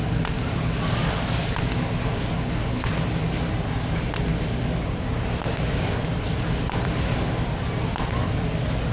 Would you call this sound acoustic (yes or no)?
yes